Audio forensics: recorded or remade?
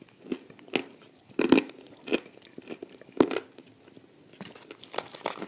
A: recorded